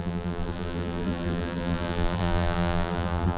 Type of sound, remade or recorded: remade